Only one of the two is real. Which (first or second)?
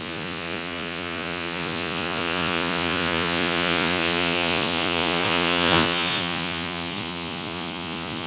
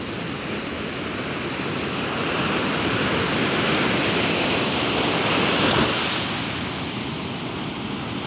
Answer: second